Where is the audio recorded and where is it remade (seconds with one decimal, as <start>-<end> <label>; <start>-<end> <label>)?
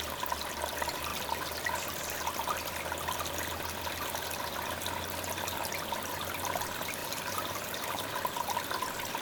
0.0-7.0 recorded; 7.0-8.1 remade; 8.1-9.2 recorded